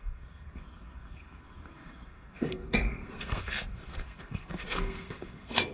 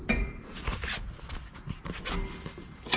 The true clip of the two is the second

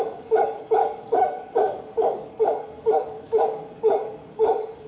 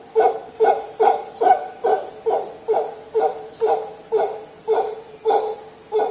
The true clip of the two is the second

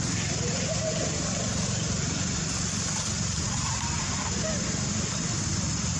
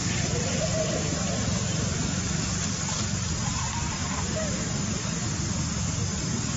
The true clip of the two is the second